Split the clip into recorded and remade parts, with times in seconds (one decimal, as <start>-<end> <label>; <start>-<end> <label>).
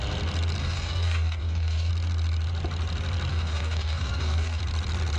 0.0-0.6 recorded; 0.6-1.9 remade; 1.9-3.3 recorded; 3.3-4.6 remade; 4.6-5.2 recorded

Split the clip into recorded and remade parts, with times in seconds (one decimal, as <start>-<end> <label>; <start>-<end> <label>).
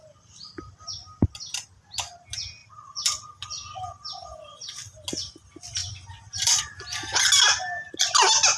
0.0-1.3 remade; 1.3-2.6 recorded; 2.6-3.8 remade; 3.8-5.8 recorded; 5.8-6.6 remade; 6.6-8.6 recorded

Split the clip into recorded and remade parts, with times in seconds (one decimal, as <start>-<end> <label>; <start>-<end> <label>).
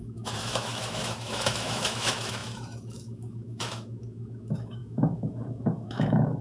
0.0-6.4 remade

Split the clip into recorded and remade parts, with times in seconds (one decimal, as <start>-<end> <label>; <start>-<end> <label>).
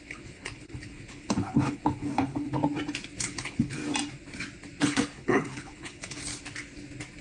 0.0-2.6 remade; 2.6-3.2 recorded; 3.2-3.8 remade; 3.8-4.8 recorded; 4.8-6.3 remade; 6.3-7.2 recorded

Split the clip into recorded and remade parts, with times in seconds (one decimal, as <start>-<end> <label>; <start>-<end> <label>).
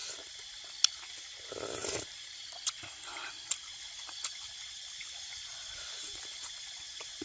0.0-7.2 recorded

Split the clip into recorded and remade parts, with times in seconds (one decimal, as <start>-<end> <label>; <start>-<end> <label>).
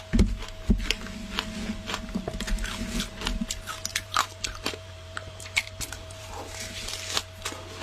0.0-3.9 recorded; 3.9-6.9 remade; 6.9-7.8 recorded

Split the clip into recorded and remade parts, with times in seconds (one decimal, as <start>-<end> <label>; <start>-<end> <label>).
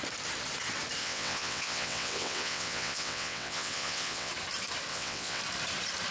0.0-1.0 recorded; 1.0-4.3 remade; 4.3-4.9 recorded; 4.9-5.4 remade; 5.4-6.1 recorded